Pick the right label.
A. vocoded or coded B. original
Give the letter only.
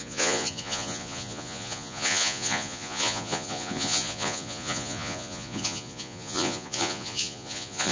A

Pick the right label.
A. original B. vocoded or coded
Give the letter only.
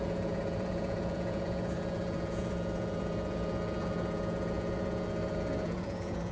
B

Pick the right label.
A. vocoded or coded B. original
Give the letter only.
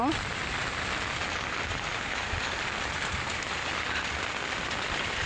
B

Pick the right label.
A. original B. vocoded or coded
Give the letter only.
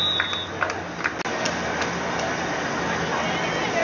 A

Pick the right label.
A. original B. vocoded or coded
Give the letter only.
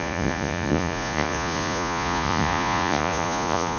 B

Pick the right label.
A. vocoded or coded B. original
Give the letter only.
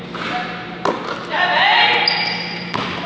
B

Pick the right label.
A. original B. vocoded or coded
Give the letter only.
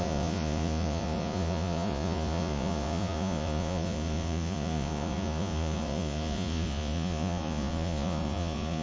B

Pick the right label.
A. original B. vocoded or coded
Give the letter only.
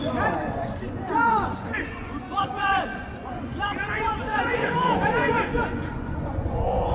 B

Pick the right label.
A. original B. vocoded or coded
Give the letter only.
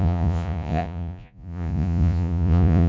B